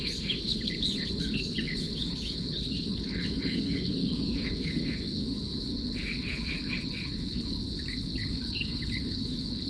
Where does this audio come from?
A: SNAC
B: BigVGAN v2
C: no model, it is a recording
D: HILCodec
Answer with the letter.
D